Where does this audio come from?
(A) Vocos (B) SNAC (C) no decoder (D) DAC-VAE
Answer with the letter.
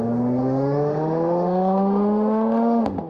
D